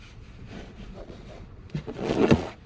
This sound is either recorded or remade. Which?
remade